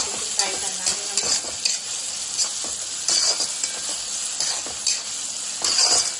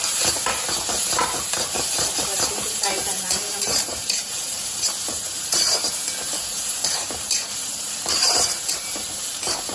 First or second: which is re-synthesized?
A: second